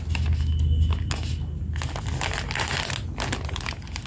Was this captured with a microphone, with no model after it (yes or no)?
yes